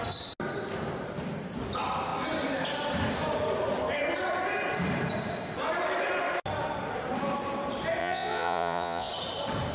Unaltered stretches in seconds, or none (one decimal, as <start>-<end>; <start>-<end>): 0.0-8.0; 9.1-9.7